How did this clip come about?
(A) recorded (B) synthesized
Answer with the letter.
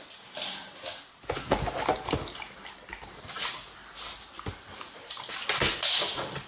A